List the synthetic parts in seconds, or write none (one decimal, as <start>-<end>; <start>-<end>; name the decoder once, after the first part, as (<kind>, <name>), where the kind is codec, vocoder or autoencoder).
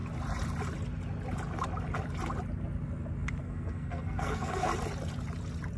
3.4-4.7 (codec, SNAC)